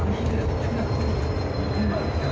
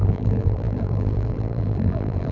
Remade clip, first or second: second